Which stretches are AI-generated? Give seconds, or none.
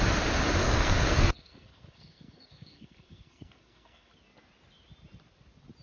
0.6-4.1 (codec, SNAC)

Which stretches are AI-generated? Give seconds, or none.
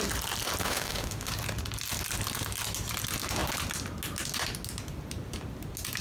0.6-1.3 (autoencoder, DAC-VAE)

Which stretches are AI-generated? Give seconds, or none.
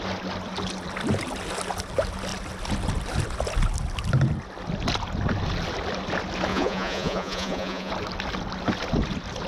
6.5-7.9 (vocoder, Vocos)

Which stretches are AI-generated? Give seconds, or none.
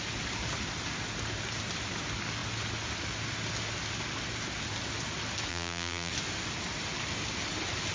5.5-6.1 (vocoder, BigVGAN v2)